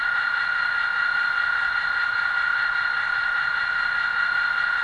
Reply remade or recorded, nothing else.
recorded